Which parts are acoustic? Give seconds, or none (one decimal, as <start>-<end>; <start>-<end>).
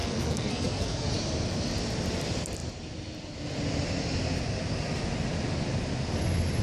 1.1-6.6